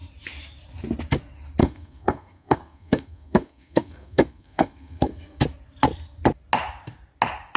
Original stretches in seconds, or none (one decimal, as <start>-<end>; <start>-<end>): 0.0-1.6; 5.4-7.6